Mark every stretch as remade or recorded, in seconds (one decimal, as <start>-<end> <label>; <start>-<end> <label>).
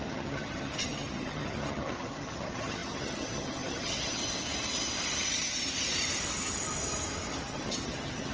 0.0-4.2 remade; 4.2-7.4 recorded; 7.4-8.3 remade